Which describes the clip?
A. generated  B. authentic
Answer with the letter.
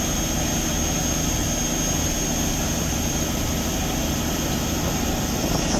B